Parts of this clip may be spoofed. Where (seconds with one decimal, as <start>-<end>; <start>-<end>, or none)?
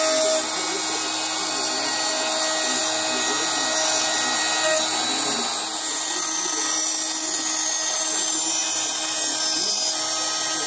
none